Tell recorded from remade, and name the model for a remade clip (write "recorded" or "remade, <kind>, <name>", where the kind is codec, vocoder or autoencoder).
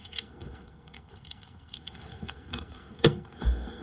remade, codec, SNAC